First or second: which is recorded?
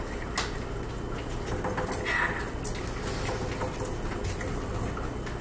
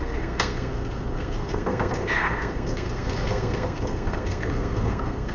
first